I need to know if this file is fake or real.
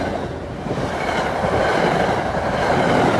real